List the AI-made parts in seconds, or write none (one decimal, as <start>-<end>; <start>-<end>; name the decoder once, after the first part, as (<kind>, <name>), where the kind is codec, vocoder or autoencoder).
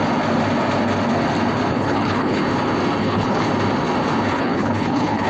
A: 1.7-2.4 (codec, HILCodec); 3.0-3.5; 4.3-5.3